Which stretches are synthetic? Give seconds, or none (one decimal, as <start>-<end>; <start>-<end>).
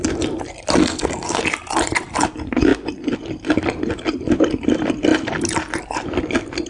0.8-1.4